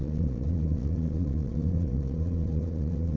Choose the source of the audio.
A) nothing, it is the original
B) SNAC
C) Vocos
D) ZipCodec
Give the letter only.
C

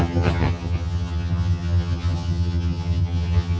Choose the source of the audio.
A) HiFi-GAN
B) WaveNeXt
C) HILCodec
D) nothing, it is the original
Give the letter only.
A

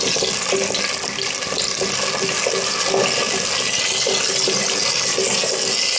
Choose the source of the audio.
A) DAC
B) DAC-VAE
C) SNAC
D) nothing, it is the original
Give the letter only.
D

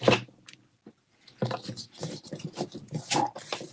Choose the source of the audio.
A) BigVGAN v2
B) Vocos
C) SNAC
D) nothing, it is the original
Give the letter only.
D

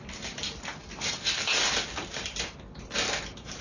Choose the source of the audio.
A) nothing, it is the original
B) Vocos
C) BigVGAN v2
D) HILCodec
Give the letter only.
C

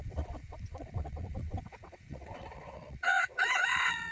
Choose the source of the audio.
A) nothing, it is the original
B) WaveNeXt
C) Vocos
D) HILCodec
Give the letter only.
B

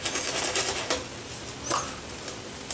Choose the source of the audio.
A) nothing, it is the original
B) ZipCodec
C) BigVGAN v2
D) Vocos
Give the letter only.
A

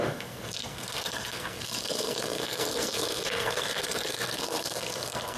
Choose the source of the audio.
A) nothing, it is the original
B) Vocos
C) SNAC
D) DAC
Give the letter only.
C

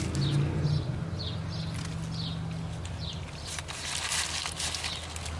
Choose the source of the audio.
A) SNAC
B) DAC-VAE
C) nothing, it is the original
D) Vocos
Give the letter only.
C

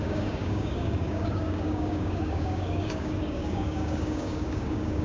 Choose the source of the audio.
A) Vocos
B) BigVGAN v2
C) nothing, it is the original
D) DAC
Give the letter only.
D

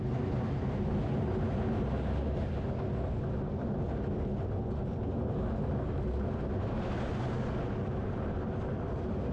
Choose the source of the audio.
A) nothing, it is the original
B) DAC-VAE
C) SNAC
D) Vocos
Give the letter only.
A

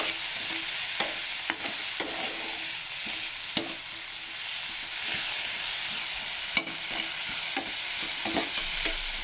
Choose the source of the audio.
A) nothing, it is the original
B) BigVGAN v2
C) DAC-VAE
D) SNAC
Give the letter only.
A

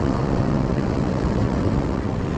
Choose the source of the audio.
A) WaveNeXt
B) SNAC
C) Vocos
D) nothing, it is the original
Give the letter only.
A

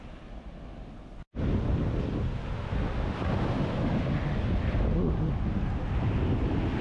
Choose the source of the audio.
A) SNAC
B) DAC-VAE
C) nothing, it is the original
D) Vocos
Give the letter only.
C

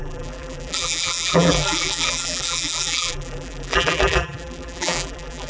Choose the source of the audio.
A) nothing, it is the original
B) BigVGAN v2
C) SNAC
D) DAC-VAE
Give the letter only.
B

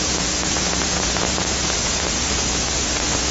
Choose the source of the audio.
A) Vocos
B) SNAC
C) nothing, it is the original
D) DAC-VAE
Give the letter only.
A